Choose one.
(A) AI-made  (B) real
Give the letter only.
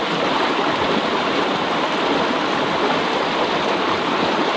B